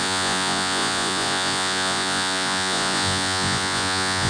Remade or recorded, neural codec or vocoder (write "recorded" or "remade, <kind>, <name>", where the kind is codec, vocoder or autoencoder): remade, vocoder, Vocos